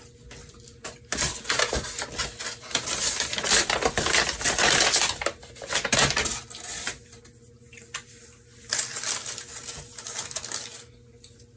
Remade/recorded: recorded